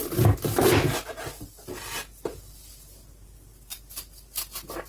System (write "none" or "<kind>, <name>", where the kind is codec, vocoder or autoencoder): none